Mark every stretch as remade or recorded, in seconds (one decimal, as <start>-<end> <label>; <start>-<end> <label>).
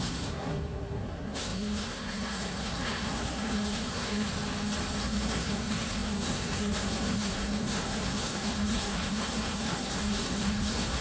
0.0-4.3 remade; 4.3-5.0 recorded; 5.0-11.0 remade